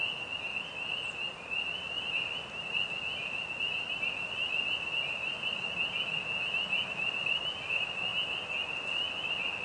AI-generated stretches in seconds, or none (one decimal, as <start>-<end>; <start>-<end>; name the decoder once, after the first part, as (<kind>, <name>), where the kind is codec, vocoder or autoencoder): none